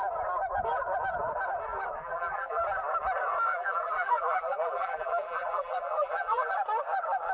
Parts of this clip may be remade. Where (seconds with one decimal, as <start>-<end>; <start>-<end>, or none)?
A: 2.0-2.6; 3.5-6.5